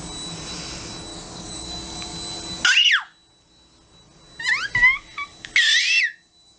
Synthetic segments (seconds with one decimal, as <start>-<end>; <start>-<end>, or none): 1.1-1.7